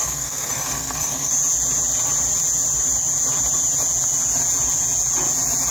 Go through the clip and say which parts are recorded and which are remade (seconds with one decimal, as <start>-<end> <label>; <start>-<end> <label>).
0.0-1.3 remade; 1.3-5.7 recorded